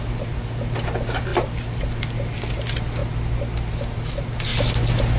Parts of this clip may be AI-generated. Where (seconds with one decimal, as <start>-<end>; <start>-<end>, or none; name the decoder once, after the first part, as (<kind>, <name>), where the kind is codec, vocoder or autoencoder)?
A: none